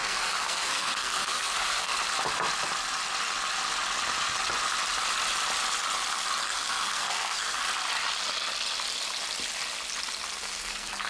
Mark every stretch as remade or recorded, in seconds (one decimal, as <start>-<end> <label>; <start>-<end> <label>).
0.0-1.9 remade; 1.9-6.4 recorded; 6.4-7.6 remade; 7.6-10.3 recorded; 10.3-11.1 remade